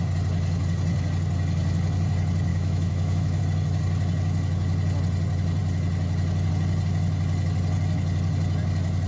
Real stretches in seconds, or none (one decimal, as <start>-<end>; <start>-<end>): 0.0-2.5; 3.4-9.1